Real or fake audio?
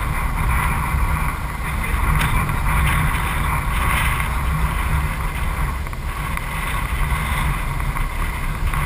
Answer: real